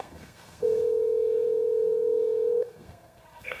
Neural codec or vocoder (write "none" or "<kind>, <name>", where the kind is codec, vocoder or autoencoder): codec, SNAC